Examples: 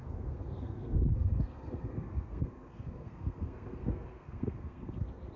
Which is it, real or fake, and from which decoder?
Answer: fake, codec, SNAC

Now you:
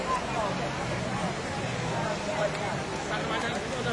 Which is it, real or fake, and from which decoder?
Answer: real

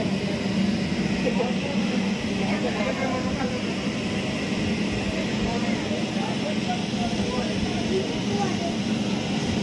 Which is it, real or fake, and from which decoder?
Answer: real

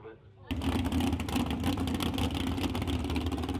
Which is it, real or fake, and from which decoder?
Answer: real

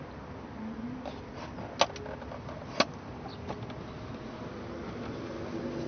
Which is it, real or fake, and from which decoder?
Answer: real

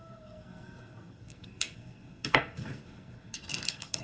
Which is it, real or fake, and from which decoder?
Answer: fake, codec, SNAC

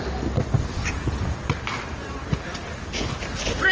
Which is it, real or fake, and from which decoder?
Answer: real